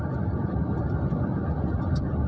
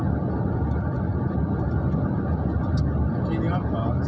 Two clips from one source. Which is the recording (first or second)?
second